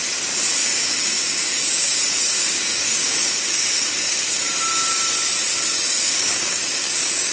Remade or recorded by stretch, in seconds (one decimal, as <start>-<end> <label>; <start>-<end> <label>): 0.0-0.6 recorded; 0.6-4.5 remade; 4.5-5.5 recorded; 5.5-7.3 remade